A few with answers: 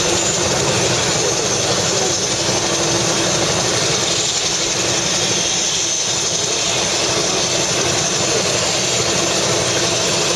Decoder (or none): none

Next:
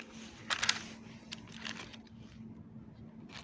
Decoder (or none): none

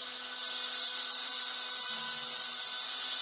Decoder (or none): none